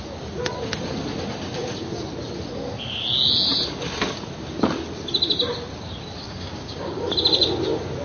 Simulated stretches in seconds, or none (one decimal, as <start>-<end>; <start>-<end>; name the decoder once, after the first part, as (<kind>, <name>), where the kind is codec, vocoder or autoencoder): 6.2-7.0 (codec, DAC)